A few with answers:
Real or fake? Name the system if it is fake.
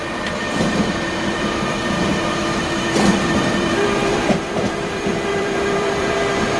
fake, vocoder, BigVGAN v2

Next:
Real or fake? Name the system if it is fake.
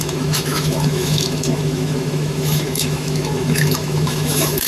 fake, autoencoder, DAC-VAE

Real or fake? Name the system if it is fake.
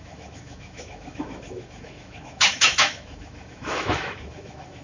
fake, autoencoder, DAC-VAE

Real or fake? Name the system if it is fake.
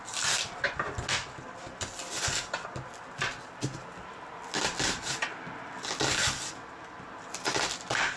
real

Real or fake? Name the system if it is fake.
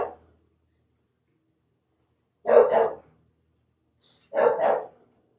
real